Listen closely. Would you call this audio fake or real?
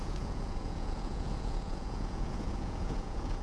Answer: fake